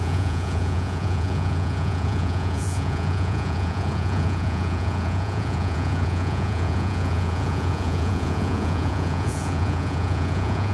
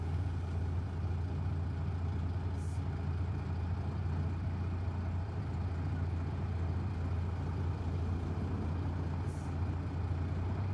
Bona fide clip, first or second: second